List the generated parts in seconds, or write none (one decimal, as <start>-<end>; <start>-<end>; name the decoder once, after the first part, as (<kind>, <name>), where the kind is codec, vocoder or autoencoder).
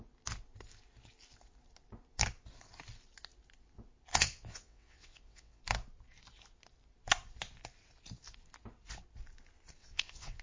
4.1-5.6 (vocoder, WaveNeXt); 9.8-10.4